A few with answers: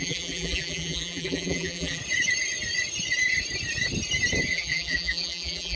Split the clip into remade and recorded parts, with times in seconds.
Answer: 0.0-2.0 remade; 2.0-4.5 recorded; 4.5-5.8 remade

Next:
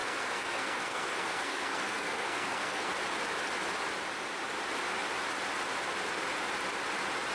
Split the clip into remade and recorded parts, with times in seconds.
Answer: 0.0-2.9 remade; 2.9-7.3 recorded

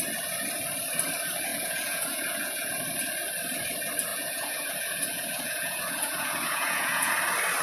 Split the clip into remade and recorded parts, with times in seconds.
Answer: 0.0-1.5 recorded; 1.5-2.7 remade; 2.7-4.1 recorded; 4.1-7.1 remade; 7.1-7.6 recorded

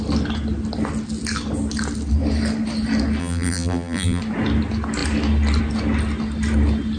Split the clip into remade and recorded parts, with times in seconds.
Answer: 0.0-3.2 recorded; 3.2-4.2 remade; 4.2-7.0 recorded